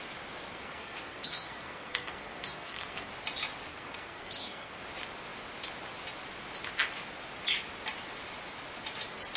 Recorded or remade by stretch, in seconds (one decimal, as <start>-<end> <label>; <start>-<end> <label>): 0.0-0.5 recorded; 0.5-3.1 remade; 3.1-3.7 recorded; 3.7-4.8 remade; 4.8-9.4 recorded